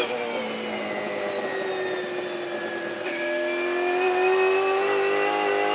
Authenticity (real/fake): real